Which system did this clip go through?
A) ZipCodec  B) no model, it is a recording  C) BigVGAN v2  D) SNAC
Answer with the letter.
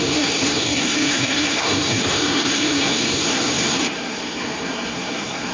D